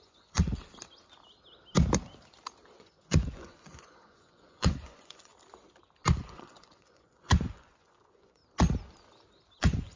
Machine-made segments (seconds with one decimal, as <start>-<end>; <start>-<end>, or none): 0.0-0.5; 2.8-5.3; 6.2-8.4; 9.6-10.0